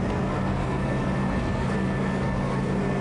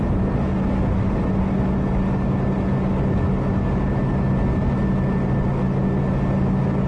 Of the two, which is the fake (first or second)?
first